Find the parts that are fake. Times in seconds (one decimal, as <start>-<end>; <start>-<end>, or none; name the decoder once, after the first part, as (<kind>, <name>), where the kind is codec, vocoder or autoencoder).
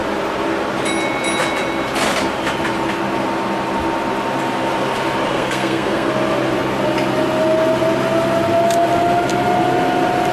5.3-6.1 (codec, SNAC)